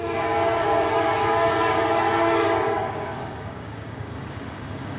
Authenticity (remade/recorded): remade